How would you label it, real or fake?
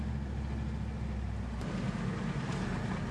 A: real